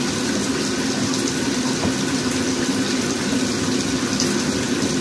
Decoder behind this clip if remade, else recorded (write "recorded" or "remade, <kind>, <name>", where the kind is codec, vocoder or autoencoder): recorded